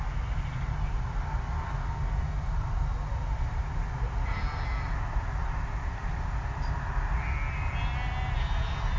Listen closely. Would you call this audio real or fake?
real